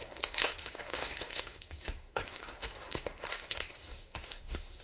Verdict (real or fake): fake